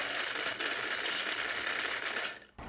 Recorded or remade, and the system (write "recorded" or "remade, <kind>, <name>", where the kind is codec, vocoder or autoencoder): recorded